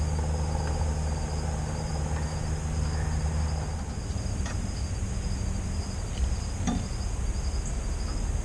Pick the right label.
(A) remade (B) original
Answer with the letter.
B